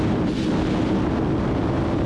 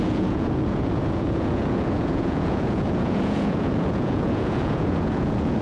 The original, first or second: first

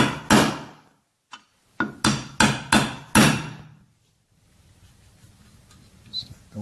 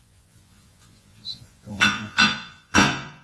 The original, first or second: first